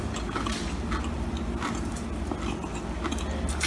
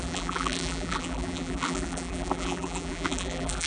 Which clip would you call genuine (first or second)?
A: first